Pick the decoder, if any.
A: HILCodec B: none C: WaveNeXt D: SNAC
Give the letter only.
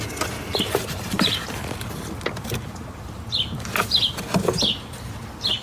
B